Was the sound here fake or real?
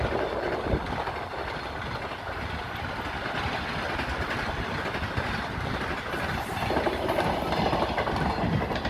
real